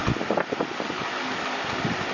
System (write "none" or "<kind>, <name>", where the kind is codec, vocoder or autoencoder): none